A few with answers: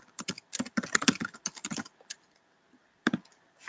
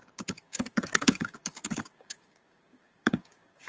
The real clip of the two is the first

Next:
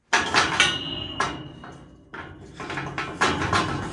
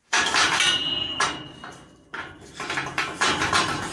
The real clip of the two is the first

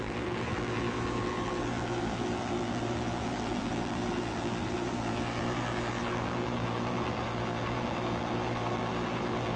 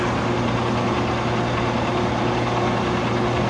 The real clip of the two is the second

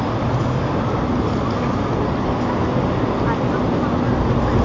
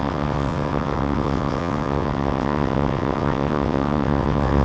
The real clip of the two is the first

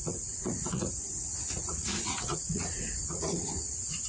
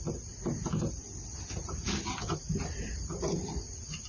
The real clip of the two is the second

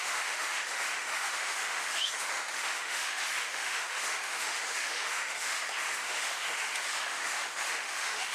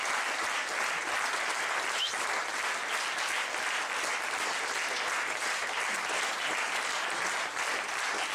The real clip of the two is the second